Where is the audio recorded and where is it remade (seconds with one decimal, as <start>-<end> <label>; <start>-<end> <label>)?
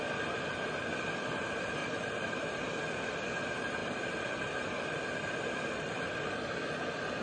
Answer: 0.0-1.8 recorded; 1.8-2.6 remade; 2.6-3.8 recorded; 3.8-6.8 remade; 6.8-7.2 recorded